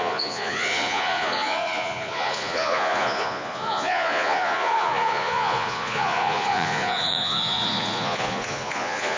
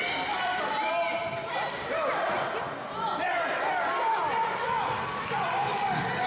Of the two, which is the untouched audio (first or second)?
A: second